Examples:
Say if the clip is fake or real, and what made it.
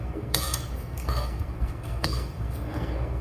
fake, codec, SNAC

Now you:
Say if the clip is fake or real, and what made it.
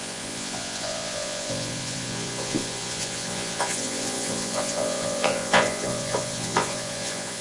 fake, vocoder, Vocos